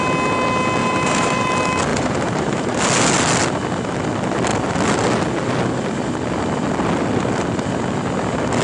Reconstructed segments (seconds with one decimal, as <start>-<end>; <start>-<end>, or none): 0.8-1.5; 1.9-2.8